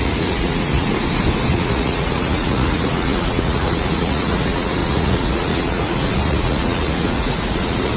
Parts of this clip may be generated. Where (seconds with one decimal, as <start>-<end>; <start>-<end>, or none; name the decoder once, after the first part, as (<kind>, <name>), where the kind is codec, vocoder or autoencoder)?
0.0-0.9 (vocoder, Vocos); 1.5-8.0